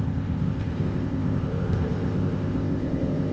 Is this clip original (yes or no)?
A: no